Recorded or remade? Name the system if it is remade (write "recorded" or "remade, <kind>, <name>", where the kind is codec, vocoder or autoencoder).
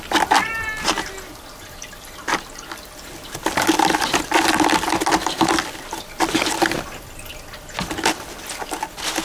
recorded